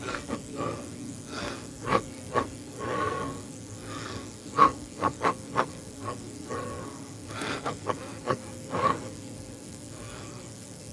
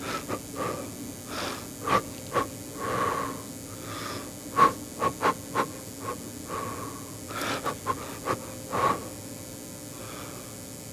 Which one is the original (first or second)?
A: second